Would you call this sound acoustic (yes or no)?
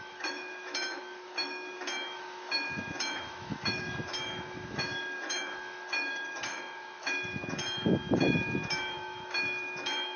no